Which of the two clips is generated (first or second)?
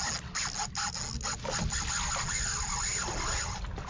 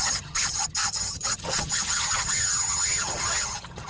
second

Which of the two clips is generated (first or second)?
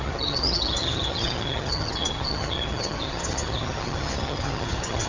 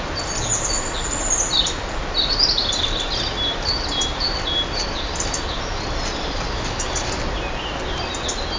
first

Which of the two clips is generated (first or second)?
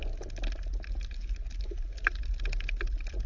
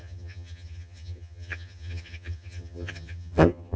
second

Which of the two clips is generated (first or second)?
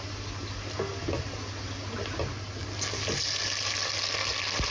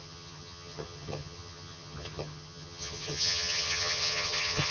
second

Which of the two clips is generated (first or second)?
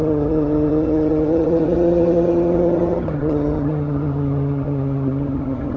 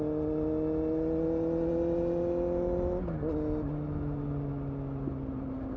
first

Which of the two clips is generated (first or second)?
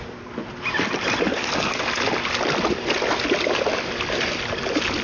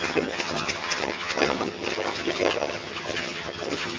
second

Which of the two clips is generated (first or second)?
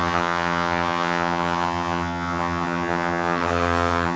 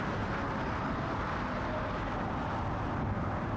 first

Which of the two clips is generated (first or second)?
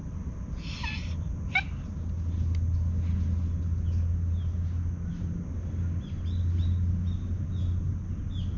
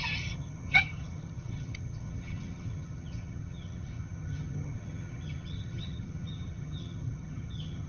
second